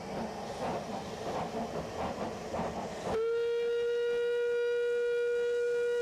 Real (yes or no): yes